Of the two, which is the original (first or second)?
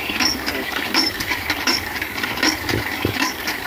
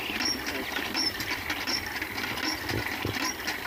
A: second